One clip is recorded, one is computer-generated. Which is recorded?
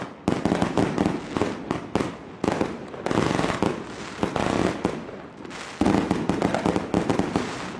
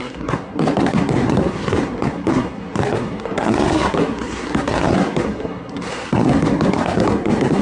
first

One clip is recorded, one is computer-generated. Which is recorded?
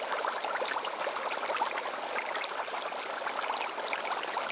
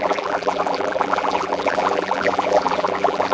first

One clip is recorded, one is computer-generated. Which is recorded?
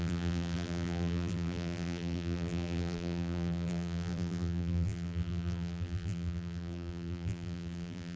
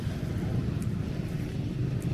second